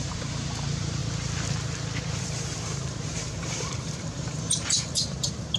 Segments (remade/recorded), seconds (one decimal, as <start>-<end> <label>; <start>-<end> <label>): 0.0-1.0 remade; 1.0-2.2 recorded; 2.2-5.6 remade